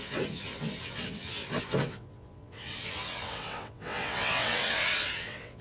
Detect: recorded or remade remade